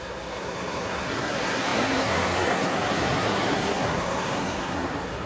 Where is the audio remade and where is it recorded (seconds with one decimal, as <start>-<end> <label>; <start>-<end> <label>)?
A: 0.0-5.3 remade